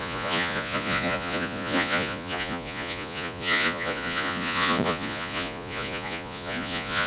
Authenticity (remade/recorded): remade